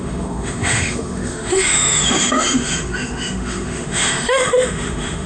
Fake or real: fake